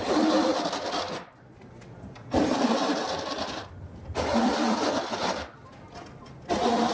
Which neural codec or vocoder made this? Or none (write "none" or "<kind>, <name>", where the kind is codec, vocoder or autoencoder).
vocoder, BigVGAN v2